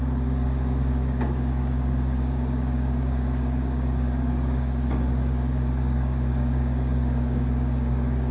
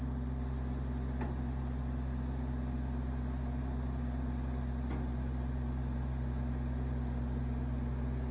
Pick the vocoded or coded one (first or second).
first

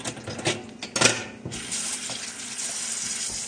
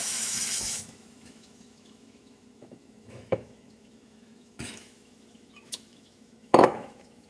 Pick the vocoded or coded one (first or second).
second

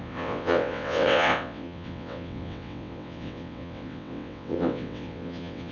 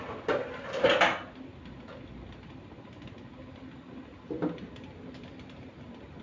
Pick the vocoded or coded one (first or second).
first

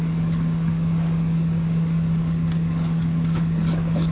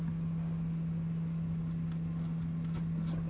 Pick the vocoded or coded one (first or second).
first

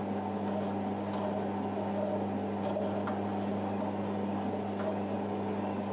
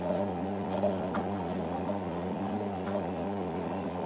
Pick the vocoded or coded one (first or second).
second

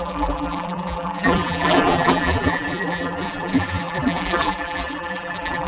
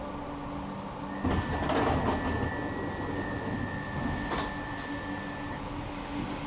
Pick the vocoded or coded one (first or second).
first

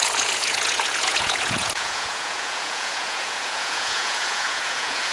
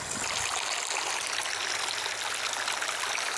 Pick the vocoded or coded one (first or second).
first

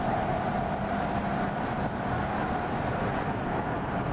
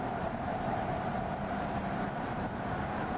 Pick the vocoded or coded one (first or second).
second